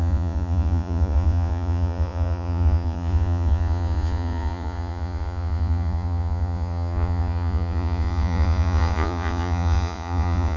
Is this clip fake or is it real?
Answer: fake